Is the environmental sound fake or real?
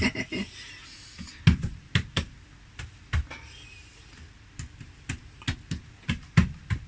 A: real